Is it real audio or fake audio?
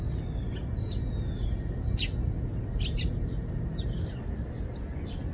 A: real